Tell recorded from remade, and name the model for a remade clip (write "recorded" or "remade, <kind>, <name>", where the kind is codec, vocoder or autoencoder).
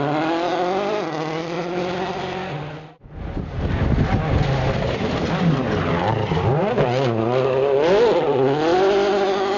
recorded